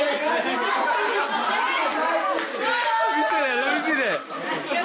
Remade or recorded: recorded